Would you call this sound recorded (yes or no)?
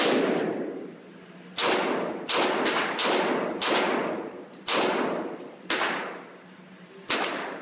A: yes